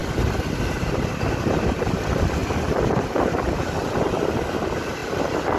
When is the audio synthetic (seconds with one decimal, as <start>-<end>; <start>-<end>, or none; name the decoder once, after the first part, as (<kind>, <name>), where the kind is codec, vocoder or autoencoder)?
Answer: none